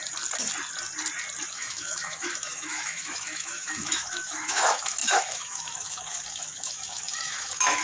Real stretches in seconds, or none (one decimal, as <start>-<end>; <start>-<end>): 0.0-1.5